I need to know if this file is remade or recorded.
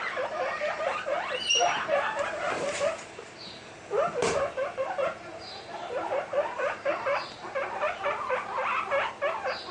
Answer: remade